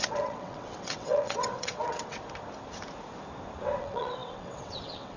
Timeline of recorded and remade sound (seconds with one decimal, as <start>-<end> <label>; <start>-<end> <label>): 0.0-2.2 remade; 2.2-3.8 recorded; 3.8-5.2 remade